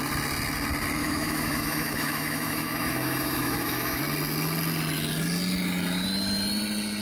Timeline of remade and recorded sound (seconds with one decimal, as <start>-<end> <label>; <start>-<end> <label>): 0.0-1.0 recorded; 1.0-4.0 remade; 4.0-7.0 recorded